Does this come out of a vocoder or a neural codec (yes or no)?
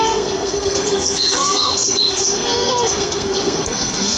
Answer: yes